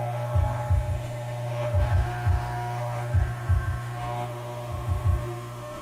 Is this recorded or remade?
remade